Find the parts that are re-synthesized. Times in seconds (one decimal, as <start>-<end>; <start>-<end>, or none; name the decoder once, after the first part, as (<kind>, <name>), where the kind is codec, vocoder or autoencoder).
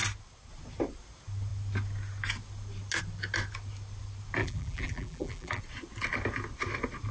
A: 4.4-5.6 (vocoder, BigVGAN v2)